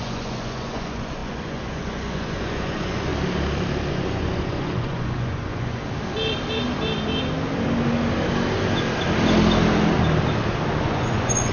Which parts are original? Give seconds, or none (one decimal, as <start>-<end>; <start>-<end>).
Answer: 3.1-3.9; 5.8-10.8